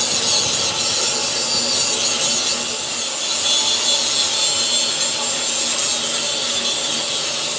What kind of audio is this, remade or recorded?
recorded